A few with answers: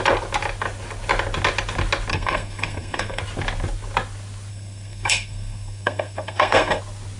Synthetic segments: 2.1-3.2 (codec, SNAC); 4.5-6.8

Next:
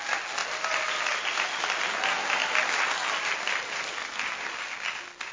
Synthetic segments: none

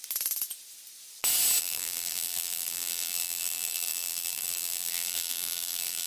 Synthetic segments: 1.6-6.1 (vocoder, BigVGAN v2)

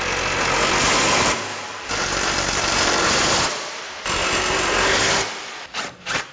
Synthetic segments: 1.5-3.1 (vocoder, BigVGAN v2); 4.2-5.2